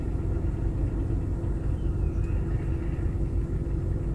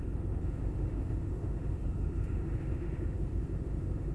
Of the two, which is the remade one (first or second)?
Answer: second